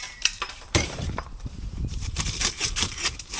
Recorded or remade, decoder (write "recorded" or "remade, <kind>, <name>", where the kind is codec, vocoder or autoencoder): remade, vocoder, BigVGAN v2